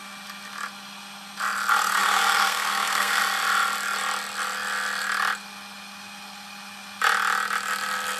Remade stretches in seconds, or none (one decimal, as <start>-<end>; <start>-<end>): 2.0-3.2